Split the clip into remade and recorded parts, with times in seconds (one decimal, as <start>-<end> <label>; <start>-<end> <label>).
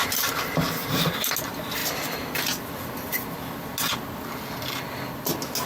0.0-5.7 recorded